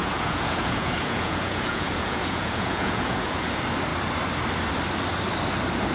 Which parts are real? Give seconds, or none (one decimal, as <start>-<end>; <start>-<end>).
3.5-5.9